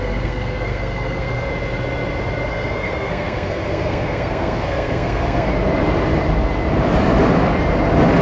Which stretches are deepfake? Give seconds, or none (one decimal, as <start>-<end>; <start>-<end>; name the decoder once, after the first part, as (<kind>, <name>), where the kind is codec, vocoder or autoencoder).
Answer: 0.0-1.5 (codec, SNAC); 2.5-5.5